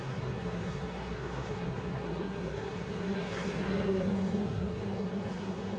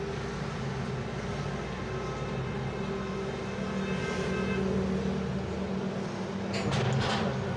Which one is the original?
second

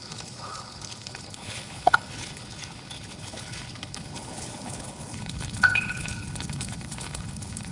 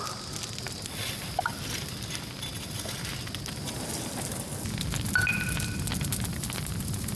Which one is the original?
second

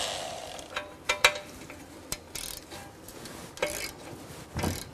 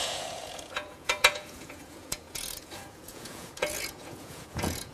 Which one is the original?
first